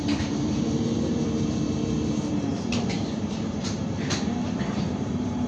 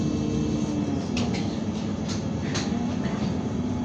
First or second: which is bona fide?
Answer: second